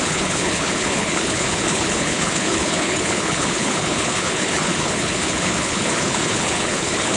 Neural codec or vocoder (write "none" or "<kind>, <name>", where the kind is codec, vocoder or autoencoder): codec, HILCodec